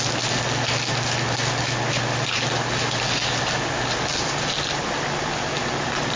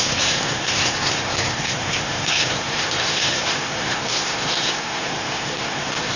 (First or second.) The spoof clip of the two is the second